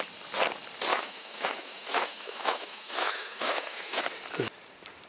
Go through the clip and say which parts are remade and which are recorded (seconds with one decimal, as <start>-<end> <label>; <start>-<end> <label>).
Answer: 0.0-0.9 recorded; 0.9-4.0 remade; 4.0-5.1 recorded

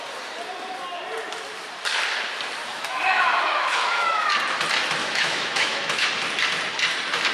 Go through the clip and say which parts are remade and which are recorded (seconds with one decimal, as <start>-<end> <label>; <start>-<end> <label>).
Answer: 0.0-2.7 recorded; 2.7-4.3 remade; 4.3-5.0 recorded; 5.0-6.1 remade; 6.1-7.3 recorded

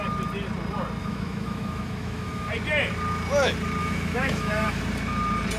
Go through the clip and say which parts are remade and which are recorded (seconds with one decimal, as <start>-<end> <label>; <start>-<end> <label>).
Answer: 0.0-1.0 recorded; 1.0-2.5 remade; 2.5-3.8 recorded; 3.8-4.8 remade; 4.8-5.6 recorded

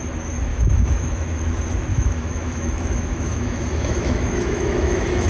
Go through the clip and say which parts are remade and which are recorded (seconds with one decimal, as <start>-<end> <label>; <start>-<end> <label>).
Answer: 0.0-0.5 recorded; 0.5-1.4 remade; 1.4-1.9 recorded; 1.9-5.3 remade

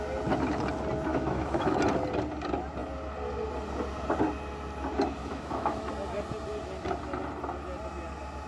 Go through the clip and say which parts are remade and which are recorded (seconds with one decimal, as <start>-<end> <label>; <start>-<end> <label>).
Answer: 0.0-1.1 recorded; 1.1-1.8 remade; 1.8-5.2 recorded; 5.2-5.9 remade; 5.9-8.5 recorded